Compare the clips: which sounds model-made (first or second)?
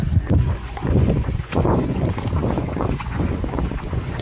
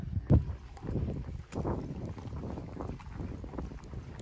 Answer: first